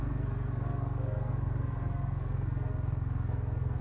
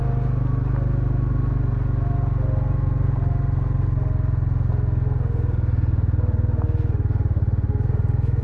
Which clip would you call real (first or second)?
second